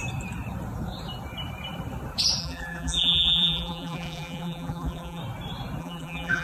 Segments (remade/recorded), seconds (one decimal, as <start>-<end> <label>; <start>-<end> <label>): 0.0-2.4 recorded; 2.4-5.2 remade; 5.2-5.8 recorded; 5.8-6.4 remade